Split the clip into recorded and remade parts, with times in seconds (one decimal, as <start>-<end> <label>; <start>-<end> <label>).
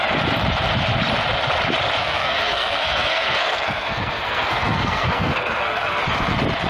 0.0-2.0 recorded; 2.0-6.0 remade; 6.0-6.7 recorded